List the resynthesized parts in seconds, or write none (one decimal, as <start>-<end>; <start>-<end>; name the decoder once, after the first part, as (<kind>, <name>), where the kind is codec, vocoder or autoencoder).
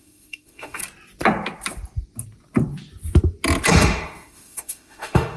0.0-0.8 (autoencoder, DAC-VAE); 3.7-5.4